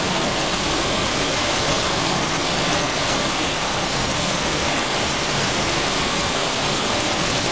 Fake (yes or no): yes